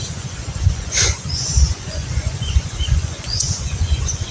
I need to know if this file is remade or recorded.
remade